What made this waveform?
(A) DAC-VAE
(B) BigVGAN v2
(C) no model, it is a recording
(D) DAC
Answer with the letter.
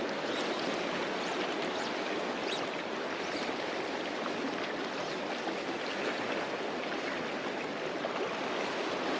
C